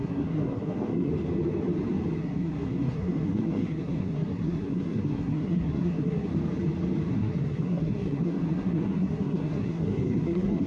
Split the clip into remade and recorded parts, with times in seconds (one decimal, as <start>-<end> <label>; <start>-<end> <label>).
0.0-1.1 remade; 1.1-2.2 recorded; 2.2-6.3 remade; 6.3-7.1 recorded; 7.1-10.7 remade